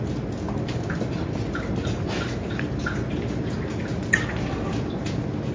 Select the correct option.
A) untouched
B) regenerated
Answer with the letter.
A